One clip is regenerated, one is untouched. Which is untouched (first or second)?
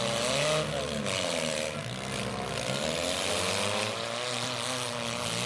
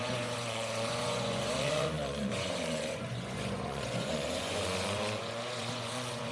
first